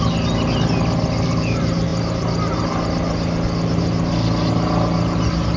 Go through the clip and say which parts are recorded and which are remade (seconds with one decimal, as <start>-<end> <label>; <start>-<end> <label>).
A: 0.0-5.6 recorded